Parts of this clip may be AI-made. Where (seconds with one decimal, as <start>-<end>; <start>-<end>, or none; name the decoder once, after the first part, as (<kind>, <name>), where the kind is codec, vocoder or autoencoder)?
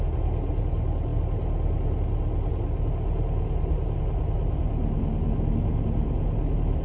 none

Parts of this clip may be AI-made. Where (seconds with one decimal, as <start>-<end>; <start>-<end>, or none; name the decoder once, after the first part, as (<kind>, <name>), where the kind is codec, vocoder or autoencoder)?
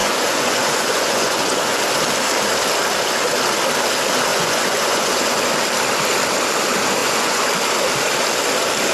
0.0-1.8 (vocoder, Vocos); 4.3-5.5; 7.0-7.5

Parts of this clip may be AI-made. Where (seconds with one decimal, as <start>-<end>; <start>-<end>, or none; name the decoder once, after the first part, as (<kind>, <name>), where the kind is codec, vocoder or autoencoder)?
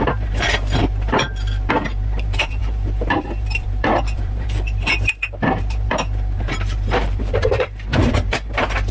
0.0-8.9 (vocoder, BigVGAN v2)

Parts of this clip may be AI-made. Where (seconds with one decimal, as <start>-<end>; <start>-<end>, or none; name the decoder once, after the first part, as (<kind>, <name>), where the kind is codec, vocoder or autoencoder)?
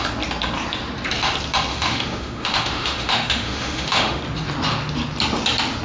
1.7-4.2 (autoencoder, DAC-VAE)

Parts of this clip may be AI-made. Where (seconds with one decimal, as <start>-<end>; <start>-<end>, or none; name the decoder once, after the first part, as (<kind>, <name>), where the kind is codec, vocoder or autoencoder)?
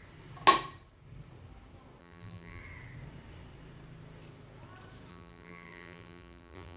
2.0-2.6 (vocoder, BigVGAN v2); 5.1-6.8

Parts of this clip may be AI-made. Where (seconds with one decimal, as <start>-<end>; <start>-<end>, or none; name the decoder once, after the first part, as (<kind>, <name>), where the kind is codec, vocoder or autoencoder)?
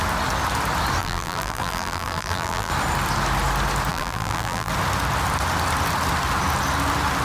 1.0-2.7 (vocoder, BigVGAN v2); 3.9-4.7